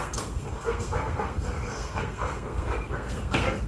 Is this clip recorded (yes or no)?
no